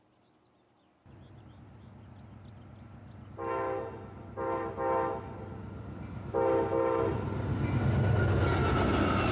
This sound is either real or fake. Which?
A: real